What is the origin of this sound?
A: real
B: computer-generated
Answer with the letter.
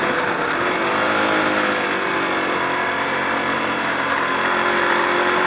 A